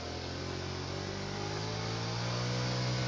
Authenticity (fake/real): real